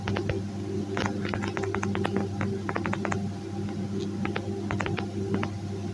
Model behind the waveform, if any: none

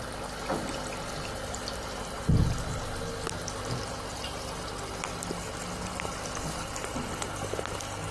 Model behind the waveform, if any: none